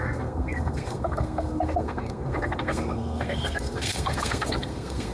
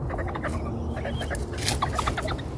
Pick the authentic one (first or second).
second